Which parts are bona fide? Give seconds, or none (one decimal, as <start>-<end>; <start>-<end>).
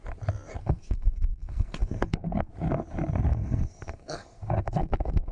0.0-0.6; 2.5-3.3